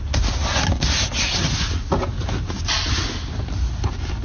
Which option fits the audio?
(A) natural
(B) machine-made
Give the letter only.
A